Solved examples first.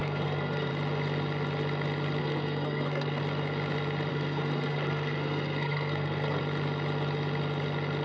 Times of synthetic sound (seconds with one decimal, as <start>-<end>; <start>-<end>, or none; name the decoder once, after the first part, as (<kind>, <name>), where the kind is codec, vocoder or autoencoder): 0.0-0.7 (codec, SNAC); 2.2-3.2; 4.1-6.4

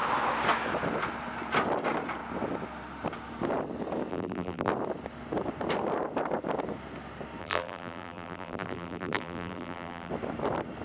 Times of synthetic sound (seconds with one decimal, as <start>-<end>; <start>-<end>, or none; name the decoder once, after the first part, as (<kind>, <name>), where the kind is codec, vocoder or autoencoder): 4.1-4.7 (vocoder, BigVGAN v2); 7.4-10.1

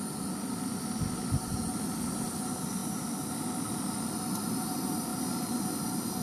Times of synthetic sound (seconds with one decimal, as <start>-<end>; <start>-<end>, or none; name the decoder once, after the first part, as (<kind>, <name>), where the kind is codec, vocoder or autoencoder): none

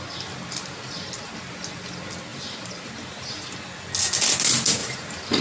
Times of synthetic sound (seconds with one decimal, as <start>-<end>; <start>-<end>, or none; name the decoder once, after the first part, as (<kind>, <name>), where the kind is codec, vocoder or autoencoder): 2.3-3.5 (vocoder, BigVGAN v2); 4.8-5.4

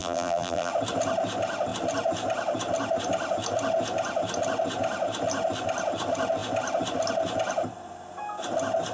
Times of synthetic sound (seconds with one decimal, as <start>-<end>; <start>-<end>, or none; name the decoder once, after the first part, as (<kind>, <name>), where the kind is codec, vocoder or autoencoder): 0.0-0.7 (vocoder, BigVGAN v2)